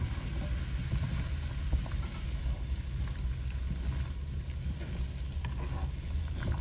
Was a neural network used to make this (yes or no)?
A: no